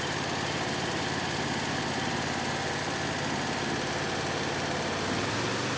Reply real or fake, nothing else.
real